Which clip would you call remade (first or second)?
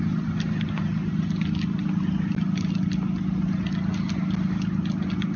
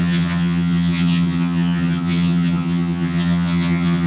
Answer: second